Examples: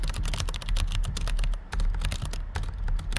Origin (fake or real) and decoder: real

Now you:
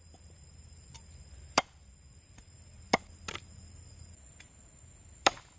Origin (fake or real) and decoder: real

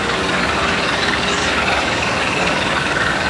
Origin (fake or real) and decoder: fake, codec, DAC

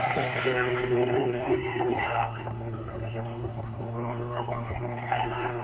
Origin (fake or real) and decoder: fake, codec, SNAC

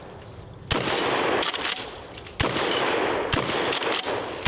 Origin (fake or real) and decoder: real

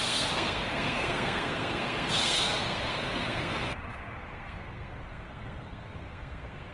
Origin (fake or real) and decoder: fake, codec, SNAC